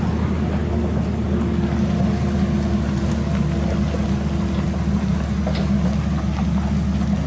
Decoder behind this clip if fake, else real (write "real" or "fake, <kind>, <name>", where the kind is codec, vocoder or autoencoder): real